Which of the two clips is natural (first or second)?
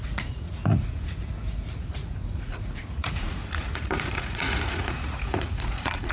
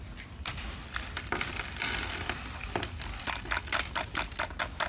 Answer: second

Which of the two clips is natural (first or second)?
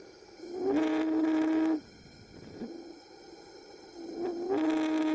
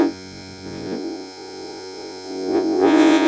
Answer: first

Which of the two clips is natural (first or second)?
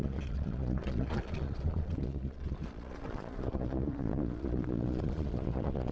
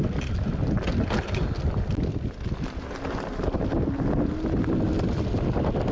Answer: second